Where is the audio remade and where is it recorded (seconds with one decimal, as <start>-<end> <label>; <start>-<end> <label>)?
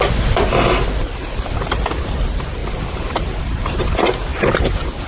0.0-2.6 recorded; 2.6-3.9 remade; 3.9-5.1 recorded